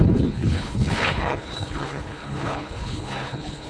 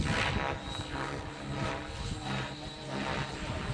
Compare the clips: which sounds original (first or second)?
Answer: second